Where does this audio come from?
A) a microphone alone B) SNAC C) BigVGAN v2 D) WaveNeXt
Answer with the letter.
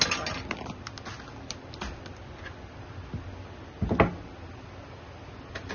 A